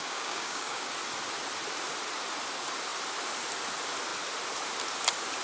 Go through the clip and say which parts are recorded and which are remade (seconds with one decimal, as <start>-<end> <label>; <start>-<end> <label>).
0.0-0.9 remade; 0.9-5.4 recorded